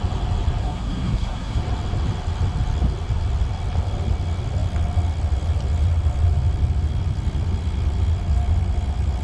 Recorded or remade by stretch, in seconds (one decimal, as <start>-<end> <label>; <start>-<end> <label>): 0.0-0.6 recorded; 0.6-1.6 remade; 1.6-9.2 recorded